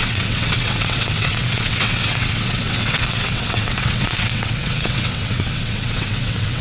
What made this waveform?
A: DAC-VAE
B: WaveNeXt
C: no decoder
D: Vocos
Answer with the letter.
B